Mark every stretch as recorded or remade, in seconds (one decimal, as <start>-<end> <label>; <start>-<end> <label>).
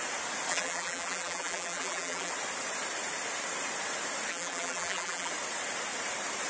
0.0-0.5 recorded; 0.5-2.3 remade; 2.3-4.3 recorded; 4.3-5.3 remade; 5.3-6.5 recorded